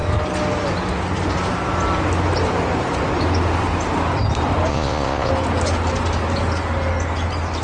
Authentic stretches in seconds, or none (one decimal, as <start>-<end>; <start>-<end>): 0.0-4.7; 5.3-7.6

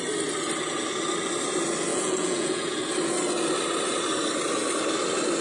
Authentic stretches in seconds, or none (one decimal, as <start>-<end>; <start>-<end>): 0.0-1.9; 2.8-5.4

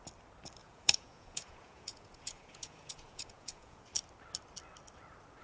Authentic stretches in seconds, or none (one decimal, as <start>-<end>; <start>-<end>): 0.0-0.6; 3.8-5.4